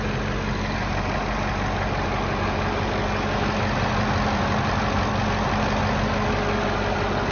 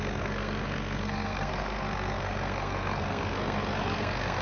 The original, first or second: first